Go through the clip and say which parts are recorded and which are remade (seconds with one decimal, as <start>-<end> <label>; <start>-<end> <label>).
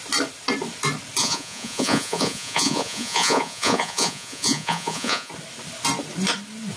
0.0-1.2 recorded; 1.2-5.3 remade; 5.3-6.8 recorded